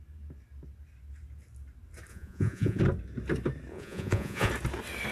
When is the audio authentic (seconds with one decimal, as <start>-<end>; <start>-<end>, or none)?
0.0-2.1; 2.8-3.7; 4.5-5.1